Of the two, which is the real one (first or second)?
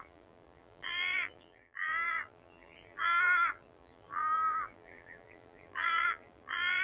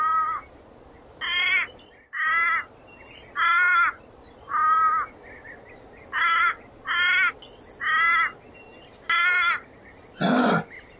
second